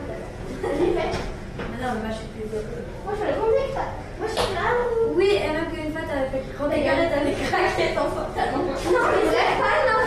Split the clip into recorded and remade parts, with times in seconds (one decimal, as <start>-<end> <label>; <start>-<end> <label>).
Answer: 0.0-1.9 remade; 1.9-10.1 recorded